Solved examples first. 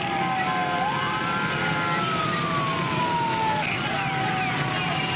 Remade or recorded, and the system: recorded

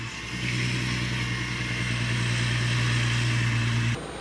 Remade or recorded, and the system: recorded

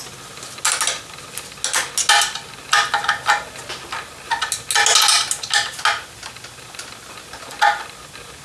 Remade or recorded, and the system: recorded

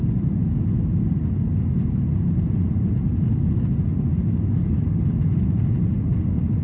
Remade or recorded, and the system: recorded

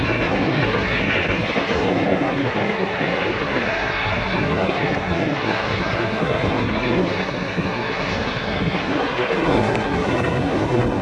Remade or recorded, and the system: remade, codec, SNAC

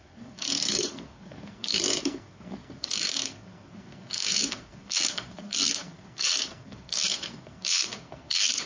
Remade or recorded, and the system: remade, codec, SNAC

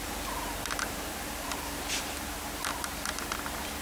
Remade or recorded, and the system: remade, vocoder, BigVGAN v2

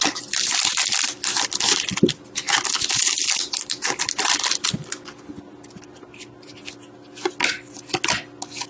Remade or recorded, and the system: recorded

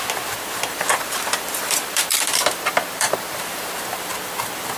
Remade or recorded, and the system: remade, vocoder, BigVGAN v2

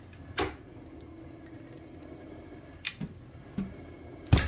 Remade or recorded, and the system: recorded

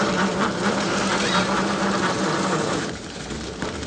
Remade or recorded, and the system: remade, vocoder, BigVGAN v2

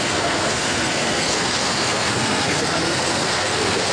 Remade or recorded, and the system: remade, codec, SNAC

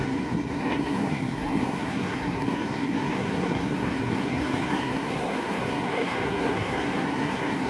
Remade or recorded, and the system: remade, codec, SNAC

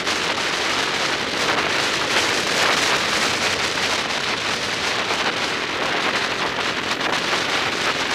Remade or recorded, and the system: recorded